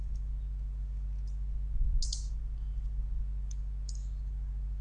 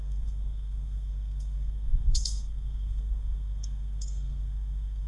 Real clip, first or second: first